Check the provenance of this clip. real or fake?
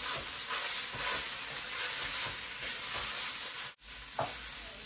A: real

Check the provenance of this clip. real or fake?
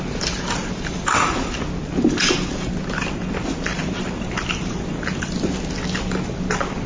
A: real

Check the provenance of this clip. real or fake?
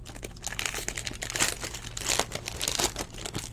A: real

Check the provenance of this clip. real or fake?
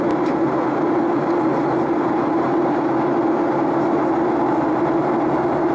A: real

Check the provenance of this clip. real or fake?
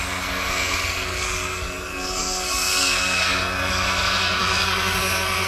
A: fake